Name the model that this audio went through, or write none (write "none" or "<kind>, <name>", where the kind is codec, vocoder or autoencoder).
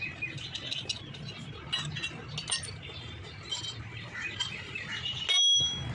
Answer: none